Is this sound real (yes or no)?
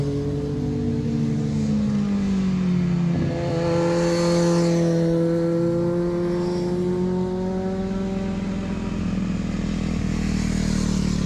yes